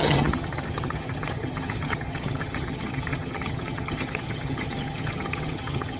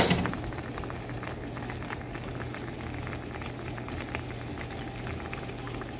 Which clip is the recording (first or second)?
second